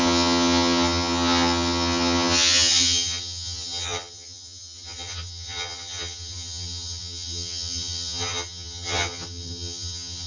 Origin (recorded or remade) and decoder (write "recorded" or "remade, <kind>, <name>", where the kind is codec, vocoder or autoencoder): remade, vocoder, HiFi-GAN